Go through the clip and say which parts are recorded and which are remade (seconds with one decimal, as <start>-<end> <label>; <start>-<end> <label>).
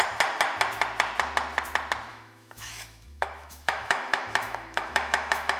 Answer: 0.0-2.1 recorded; 2.1-5.6 remade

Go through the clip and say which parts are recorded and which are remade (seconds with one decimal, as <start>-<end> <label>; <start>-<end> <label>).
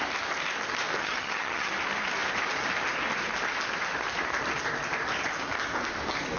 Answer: 0.0-1.0 recorded; 1.0-1.7 remade; 1.7-6.4 recorded